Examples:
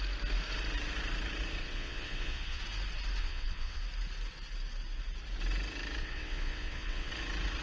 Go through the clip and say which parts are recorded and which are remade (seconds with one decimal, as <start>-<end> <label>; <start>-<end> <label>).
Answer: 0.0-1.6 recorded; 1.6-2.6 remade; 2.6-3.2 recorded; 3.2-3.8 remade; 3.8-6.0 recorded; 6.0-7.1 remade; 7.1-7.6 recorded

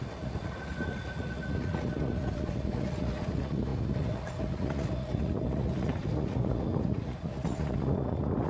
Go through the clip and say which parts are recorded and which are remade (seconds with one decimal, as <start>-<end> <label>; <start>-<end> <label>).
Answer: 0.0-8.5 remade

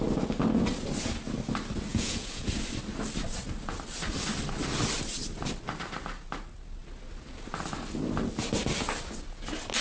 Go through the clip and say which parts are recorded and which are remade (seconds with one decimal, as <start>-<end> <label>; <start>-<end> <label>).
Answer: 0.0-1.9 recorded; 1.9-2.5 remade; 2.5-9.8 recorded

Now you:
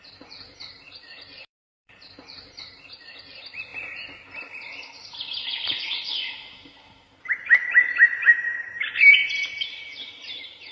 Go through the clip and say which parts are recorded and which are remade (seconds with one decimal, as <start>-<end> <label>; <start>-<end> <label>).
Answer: 0.0-3.7 remade; 3.7-4.6 recorded; 4.6-9.2 remade; 9.2-10.0 recorded; 10.0-10.7 remade